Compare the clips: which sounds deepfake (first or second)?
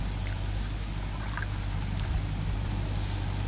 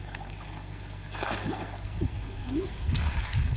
second